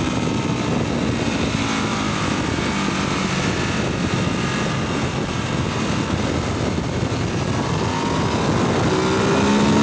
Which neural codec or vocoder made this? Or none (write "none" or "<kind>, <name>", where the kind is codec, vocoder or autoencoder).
none